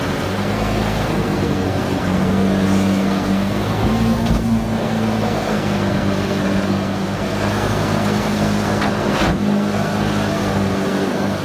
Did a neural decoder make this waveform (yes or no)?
yes